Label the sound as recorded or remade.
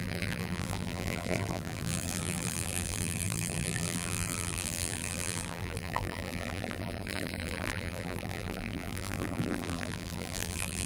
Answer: remade